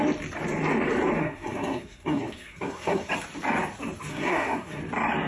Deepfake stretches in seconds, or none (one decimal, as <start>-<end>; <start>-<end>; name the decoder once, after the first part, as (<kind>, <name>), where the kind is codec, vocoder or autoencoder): 1.2-3.1 (codec, SNAC); 4.1-4.8